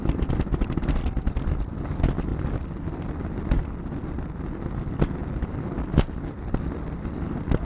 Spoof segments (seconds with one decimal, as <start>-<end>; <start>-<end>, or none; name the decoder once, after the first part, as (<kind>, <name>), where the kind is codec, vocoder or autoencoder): 0.0-2.3 (vocoder, BigVGAN v2); 3.2-7.6